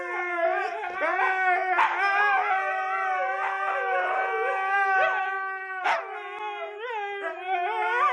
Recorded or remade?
recorded